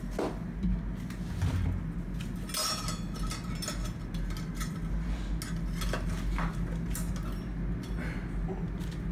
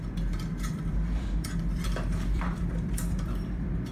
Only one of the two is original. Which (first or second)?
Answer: first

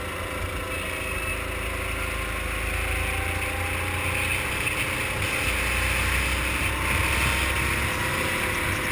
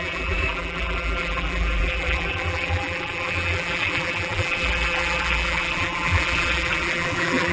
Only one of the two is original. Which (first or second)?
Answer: first